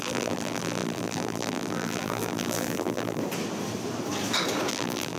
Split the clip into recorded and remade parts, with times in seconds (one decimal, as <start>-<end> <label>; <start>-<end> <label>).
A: 0.0-3.2 remade; 3.2-4.7 recorded; 4.7-5.2 remade